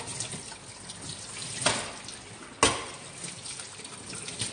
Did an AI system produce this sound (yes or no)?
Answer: no